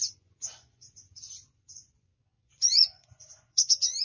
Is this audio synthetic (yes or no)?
yes